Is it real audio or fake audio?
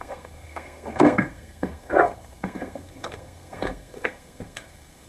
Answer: fake